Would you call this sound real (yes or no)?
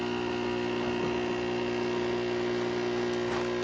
yes